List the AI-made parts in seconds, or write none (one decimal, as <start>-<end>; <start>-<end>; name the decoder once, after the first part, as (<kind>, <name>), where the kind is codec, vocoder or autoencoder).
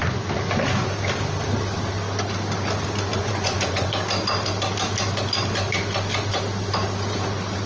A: 3.2-3.9 (vocoder, Vocos)